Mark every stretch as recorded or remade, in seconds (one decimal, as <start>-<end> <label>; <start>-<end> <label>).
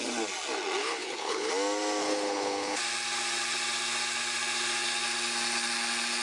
0.0-0.8 recorded; 0.8-1.5 remade; 1.5-2.0 recorded; 2.0-2.8 remade; 2.8-6.2 recorded